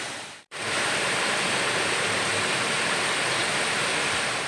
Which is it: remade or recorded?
remade